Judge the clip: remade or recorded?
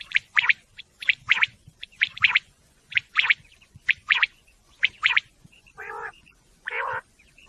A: remade